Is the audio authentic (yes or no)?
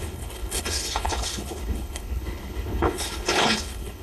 no